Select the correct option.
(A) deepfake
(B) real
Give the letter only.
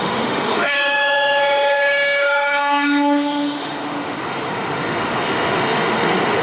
A